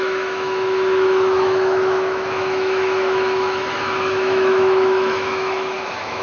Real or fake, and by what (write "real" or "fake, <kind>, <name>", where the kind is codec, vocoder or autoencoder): fake, autoencoder, DAC-VAE